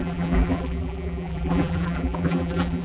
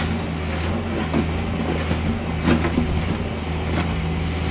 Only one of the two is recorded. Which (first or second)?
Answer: second